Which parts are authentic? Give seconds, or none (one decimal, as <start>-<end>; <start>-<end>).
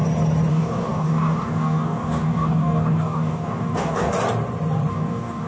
0.0-0.5; 4.1-4.9